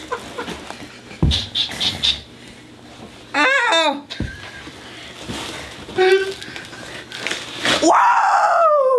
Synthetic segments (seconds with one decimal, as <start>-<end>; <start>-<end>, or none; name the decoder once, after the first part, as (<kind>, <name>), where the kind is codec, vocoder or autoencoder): none